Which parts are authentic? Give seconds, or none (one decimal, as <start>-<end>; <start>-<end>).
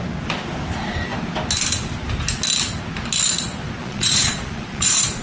0.0-3.8